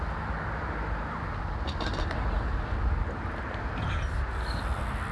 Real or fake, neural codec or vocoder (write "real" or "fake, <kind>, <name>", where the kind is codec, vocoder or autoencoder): real